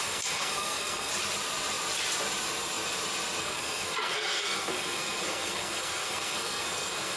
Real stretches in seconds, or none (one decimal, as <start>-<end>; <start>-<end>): 1.1-3.4